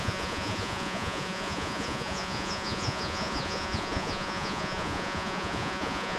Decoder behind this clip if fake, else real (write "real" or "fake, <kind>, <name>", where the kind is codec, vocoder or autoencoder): fake, vocoder, Vocos